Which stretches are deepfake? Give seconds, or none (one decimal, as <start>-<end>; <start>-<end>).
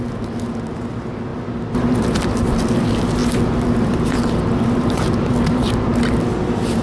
1.3-2.8; 3.2-6.0